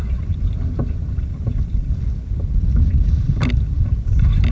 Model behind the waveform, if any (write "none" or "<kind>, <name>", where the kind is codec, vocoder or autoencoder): none